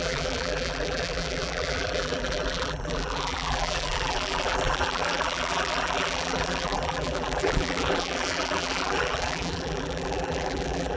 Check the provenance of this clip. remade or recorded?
remade